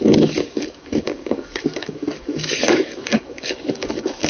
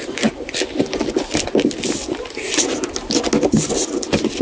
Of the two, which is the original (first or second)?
second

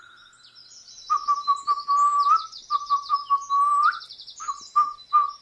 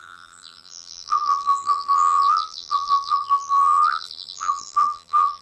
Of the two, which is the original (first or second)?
first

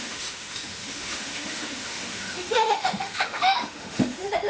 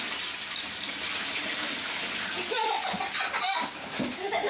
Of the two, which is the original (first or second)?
second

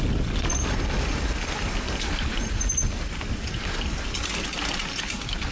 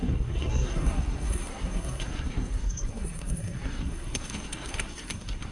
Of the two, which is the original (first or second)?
first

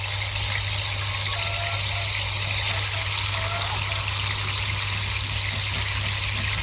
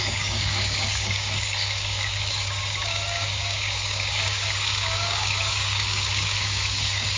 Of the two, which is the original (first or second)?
first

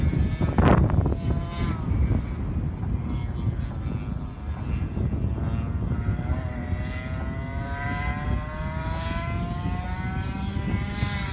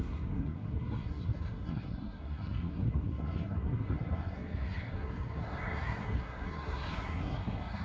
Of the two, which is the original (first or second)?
first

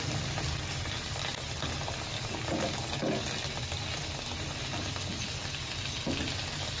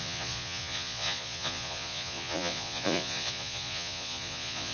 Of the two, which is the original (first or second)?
first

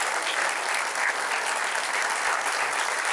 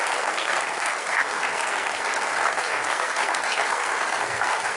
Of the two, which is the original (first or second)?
first